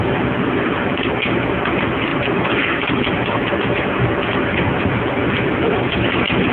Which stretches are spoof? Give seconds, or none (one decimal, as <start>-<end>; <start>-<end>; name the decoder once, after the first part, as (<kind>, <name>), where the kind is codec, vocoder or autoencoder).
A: none